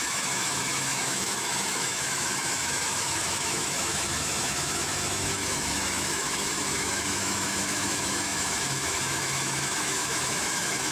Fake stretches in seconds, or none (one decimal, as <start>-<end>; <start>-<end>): 0.0-10.9